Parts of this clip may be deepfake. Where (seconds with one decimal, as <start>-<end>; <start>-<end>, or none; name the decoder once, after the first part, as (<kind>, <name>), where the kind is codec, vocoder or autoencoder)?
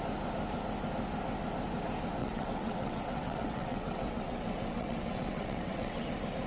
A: 2.2-6.1 (vocoder, WaveNeXt)